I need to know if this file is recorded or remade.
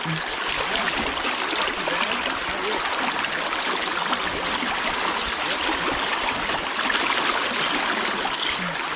recorded